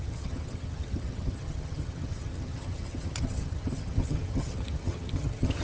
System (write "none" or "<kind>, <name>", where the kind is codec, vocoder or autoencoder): vocoder, HiFi-GAN